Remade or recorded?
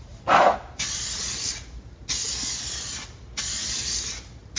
recorded